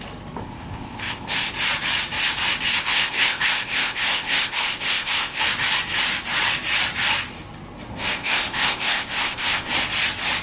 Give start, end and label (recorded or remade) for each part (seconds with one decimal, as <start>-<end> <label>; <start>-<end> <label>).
0.0-0.4 recorded; 0.4-1.5 remade; 1.5-2.8 recorded; 2.8-5.4 remade; 5.4-7.9 recorded; 7.9-9.7 remade; 9.7-10.4 recorded